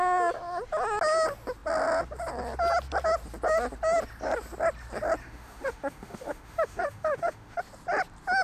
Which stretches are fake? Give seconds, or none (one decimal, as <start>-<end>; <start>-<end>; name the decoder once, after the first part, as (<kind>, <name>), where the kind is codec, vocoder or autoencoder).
5.2-7.6 (autoencoder, DAC-VAE)